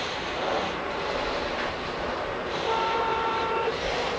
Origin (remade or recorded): remade